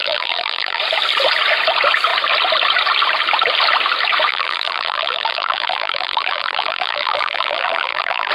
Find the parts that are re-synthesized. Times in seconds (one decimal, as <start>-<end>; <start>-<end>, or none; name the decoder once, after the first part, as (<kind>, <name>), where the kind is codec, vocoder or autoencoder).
0.0-0.8 (vocoder, BigVGAN v2); 4.3-8.3